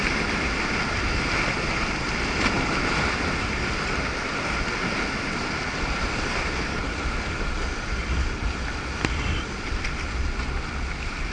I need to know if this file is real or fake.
real